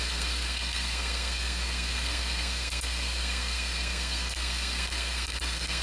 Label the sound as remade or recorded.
remade